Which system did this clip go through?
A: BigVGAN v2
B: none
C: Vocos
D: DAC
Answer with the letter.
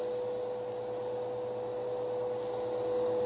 B